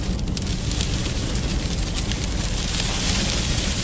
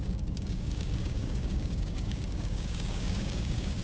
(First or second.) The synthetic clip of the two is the second